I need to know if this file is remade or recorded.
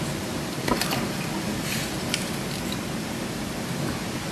remade